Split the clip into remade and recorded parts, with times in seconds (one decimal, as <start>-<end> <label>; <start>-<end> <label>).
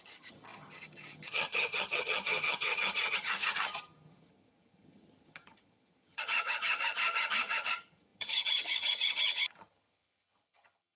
0.0-11.0 remade